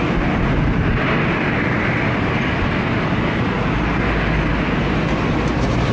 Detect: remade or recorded recorded